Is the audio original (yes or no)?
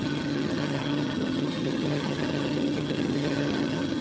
no